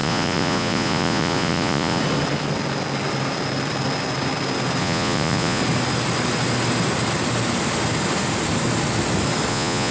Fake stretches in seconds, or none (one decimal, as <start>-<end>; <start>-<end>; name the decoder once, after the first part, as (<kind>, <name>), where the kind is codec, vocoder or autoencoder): 0.0-2.0 (vocoder, Vocos); 4.8-5.6; 9.5-9.9